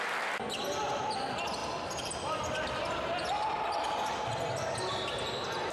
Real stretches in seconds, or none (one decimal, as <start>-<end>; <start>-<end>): 0.0-5.7